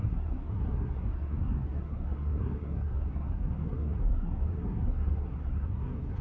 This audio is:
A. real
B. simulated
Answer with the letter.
B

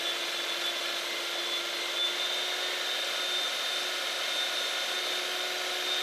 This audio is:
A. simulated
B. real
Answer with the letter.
B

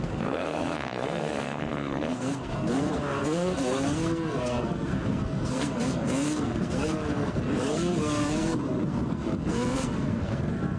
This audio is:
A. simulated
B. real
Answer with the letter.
A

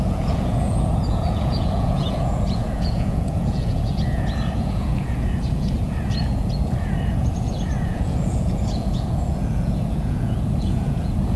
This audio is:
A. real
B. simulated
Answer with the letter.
B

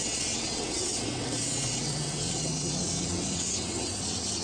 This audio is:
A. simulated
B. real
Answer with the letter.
A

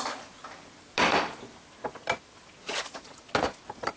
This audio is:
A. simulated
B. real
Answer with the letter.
B